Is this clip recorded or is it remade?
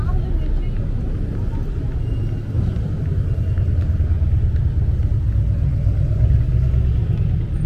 recorded